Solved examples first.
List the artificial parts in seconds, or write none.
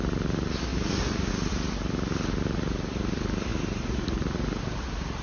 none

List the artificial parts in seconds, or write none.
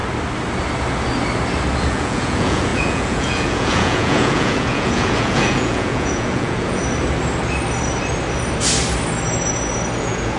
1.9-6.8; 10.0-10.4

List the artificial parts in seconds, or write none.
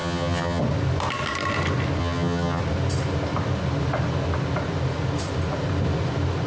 0.0-0.6; 2.0-2.6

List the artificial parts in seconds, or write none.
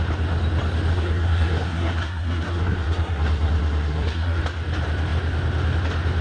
0.9-4.4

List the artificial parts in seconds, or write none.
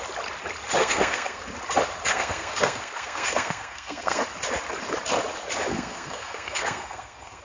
0.8-1.4; 2.1-4.2; 5.7-7.4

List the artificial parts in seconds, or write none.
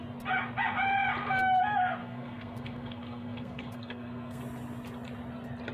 2.0-4.4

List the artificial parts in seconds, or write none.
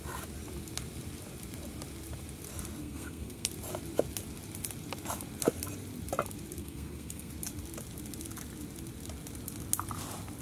2.8-3.5; 6.6-7.3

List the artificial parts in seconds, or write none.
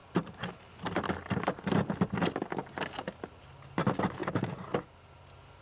none